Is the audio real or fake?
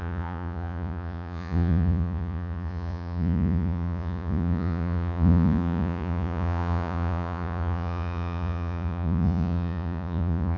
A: fake